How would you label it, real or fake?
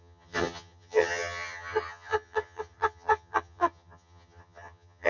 fake